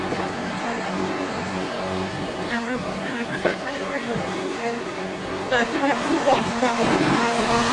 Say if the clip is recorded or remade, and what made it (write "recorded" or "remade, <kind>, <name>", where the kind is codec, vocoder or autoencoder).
remade, codec, SNAC